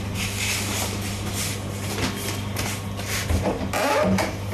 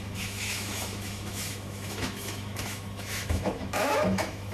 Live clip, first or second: first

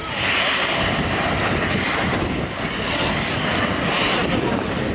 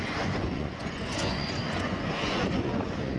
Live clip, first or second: first